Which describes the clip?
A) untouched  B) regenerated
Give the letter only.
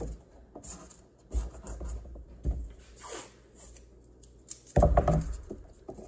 A